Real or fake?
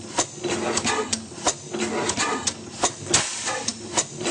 real